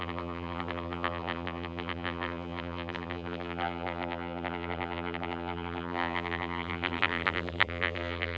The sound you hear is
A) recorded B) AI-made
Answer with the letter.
B